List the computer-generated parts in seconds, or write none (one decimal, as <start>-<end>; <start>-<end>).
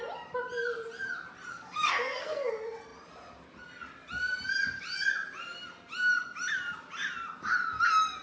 1.5-2.5